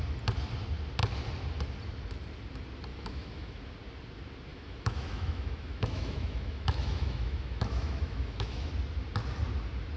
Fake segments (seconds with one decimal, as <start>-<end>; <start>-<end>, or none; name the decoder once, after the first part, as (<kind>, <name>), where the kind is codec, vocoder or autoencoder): 2.9-3.6 (autoencoder, DAC-VAE); 4.5-8.7